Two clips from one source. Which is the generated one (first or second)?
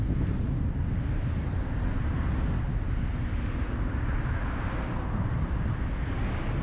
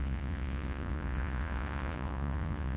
second